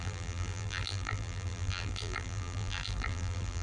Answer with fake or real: fake